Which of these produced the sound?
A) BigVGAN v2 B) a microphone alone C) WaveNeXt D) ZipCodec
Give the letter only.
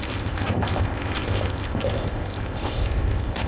D